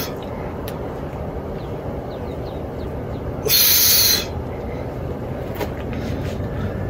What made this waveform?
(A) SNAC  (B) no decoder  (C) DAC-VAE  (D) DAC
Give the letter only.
B